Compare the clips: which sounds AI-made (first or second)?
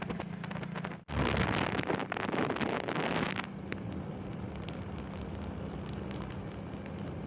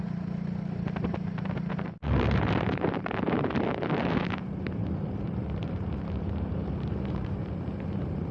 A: second